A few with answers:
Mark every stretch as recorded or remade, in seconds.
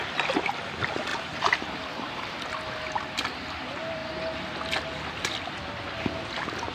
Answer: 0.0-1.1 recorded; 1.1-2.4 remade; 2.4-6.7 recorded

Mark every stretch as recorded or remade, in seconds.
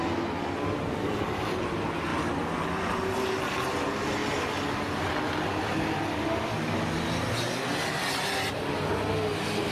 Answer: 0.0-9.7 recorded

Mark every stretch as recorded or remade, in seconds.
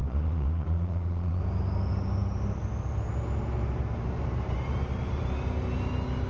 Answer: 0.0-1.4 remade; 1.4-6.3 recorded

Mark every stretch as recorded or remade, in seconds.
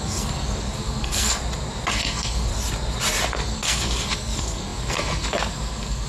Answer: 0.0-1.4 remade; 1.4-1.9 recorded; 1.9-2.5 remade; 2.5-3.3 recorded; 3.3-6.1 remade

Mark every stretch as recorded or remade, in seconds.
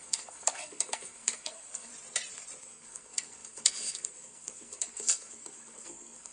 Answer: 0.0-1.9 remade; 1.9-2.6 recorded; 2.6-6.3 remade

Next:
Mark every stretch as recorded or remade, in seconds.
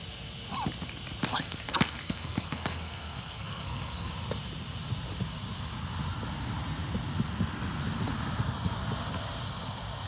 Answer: 0.0-1.3 recorded; 1.3-4.1 remade; 4.1-10.1 recorded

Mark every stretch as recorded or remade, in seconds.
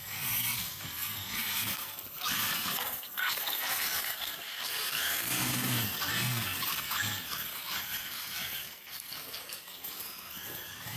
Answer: 0.0-11.0 remade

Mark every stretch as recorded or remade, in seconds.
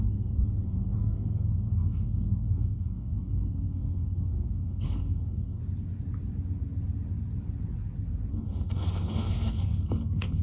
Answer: 0.0-5.6 remade; 5.6-8.3 recorded; 8.3-10.4 remade